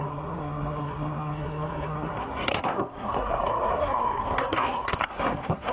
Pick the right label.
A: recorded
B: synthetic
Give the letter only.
B